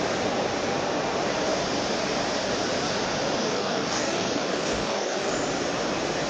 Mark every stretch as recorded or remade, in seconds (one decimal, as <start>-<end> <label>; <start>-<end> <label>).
0.0-3.4 recorded; 3.4-5.3 remade; 5.3-6.3 recorded

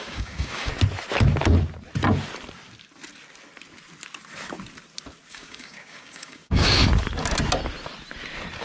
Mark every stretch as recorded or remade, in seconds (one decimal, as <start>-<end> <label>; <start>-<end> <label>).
0.0-0.7 remade; 0.7-5.3 recorded; 5.3-6.8 remade; 6.8-8.6 recorded